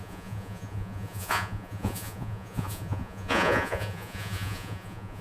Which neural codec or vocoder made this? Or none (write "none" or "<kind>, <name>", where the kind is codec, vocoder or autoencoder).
vocoder, Vocos